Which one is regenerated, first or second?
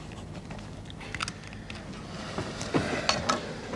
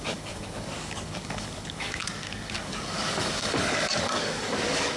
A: second